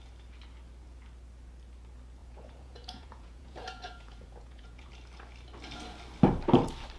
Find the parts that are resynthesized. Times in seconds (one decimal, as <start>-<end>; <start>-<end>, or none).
2.2-4.9